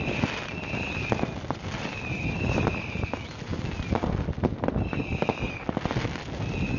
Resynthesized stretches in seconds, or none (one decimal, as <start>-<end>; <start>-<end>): none

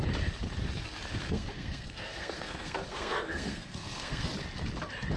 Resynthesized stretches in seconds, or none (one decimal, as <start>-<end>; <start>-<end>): 1.2-4.3

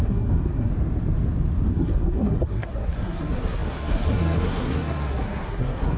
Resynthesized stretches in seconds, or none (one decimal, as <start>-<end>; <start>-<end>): 0.0-0.7; 1.7-6.0

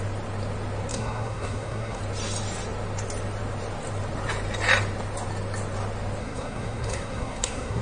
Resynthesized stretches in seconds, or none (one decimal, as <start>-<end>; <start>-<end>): 0.9-2.0; 6.2-7.8